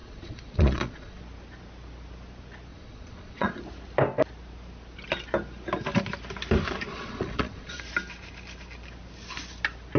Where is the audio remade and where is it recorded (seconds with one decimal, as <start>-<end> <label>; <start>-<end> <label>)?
0.0-1.2 remade; 1.2-2.7 recorded; 2.7-3.6 remade; 3.6-6.9 recorded; 6.9-7.8 remade; 7.8-10.0 recorded